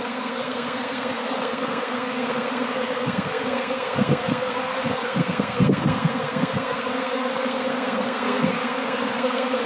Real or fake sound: fake